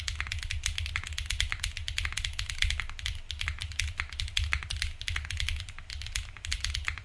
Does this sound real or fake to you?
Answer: real